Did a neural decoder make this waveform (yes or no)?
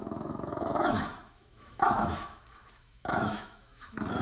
yes